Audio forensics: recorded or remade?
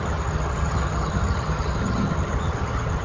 remade